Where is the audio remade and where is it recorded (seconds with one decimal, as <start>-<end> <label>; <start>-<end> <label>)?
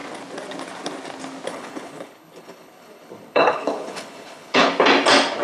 0.0-1.5 recorded; 1.5-4.7 remade; 4.7-5.4 recorded